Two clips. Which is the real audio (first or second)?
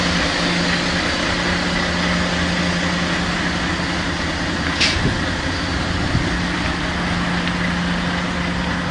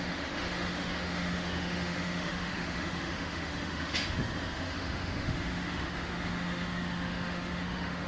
first